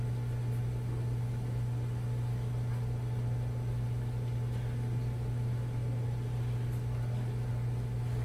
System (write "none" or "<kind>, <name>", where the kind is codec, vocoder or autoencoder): none